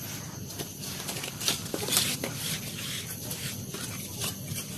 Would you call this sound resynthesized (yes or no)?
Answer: no